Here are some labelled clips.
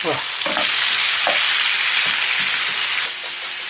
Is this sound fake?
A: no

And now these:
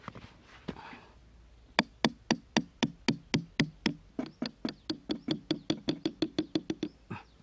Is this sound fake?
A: no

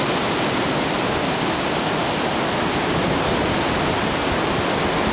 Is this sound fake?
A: no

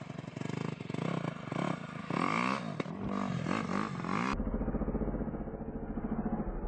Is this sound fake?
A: no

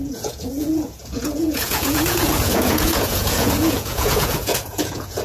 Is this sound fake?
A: yes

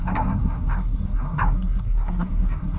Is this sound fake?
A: yes